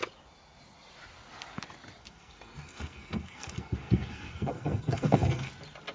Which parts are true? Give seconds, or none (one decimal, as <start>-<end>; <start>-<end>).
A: 0.0-2.0; 5.5-5.9